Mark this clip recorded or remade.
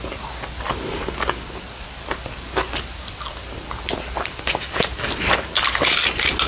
recorded